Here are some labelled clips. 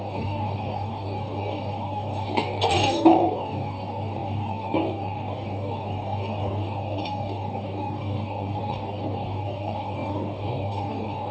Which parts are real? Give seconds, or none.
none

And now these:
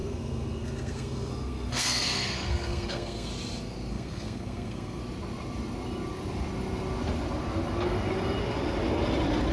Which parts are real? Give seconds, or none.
3.3-3.9; 5.0-9.5

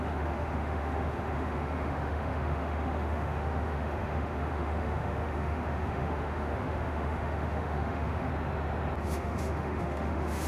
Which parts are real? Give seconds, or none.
8.3-9.0

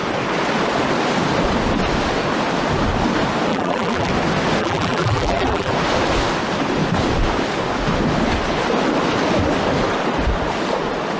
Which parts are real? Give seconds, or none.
0.0-3.5; 4.1-4.6; 5.7-11.2

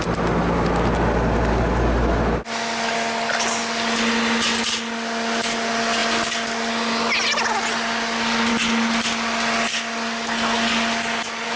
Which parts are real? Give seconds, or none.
0.0-11.6

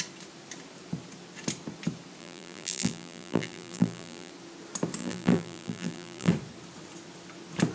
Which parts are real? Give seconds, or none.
0.0-2.2; 4.3-5.0; 6.3-7.7

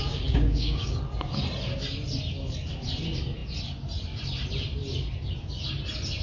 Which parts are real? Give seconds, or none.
1.0-6.2